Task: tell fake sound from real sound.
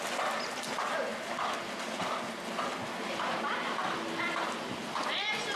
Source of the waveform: real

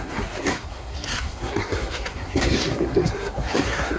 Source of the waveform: fake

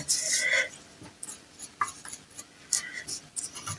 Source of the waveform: real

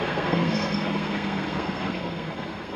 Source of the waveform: fake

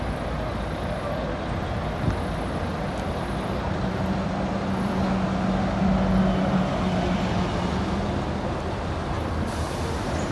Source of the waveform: real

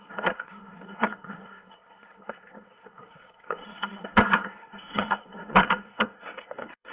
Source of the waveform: fake